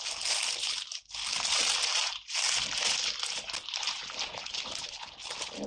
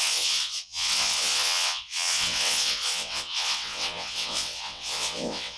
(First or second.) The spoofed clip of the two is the second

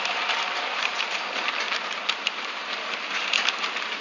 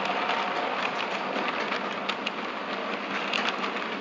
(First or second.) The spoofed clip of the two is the first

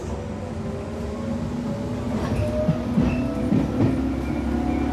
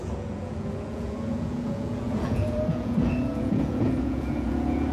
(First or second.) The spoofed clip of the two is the second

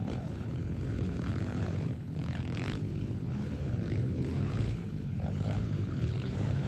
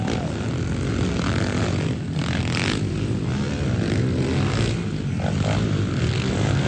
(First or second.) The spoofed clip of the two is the first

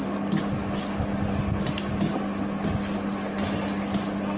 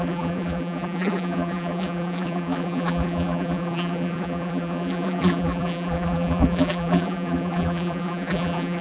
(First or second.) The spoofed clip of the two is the second